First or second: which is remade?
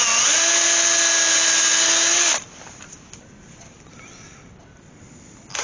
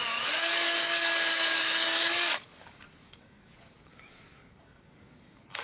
second